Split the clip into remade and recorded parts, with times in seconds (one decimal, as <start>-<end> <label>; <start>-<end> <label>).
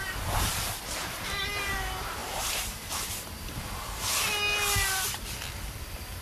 0.0-6.2 recorded